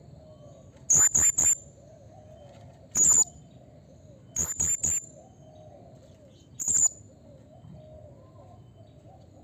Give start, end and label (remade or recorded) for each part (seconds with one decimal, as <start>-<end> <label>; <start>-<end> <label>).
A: 0.0-9.4 recorded